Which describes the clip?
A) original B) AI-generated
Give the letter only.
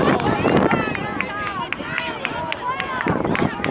A